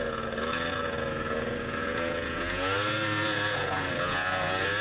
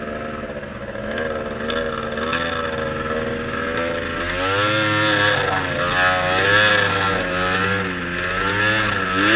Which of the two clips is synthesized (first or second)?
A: first